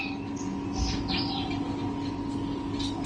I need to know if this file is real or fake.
real